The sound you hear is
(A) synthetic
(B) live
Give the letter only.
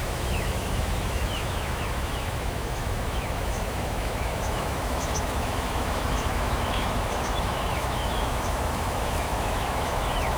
A